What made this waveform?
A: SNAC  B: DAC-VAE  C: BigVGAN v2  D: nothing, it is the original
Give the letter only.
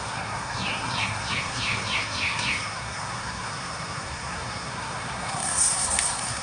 A